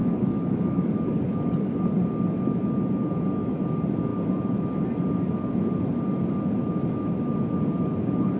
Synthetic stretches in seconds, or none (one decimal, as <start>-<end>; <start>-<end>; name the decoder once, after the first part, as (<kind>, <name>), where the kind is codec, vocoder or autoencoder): 0.0-2.0 (codec, DAC)